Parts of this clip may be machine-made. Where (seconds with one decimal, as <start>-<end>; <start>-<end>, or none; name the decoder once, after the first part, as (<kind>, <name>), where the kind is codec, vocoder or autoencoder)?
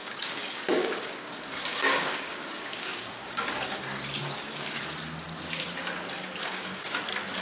0.0-3.8 (codec, DAC); 4.2-4.8; 6.4-7.0